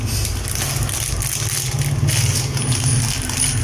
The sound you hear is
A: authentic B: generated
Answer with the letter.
A